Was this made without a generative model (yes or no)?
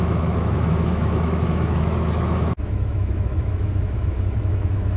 no